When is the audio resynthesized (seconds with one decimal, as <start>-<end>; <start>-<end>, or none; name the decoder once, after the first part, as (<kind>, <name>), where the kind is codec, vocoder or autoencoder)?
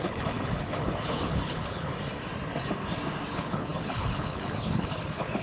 0.0-1.9 (codec, HILCodec); 3.3-5.4